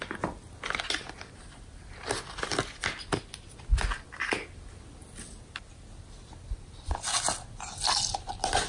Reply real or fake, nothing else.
real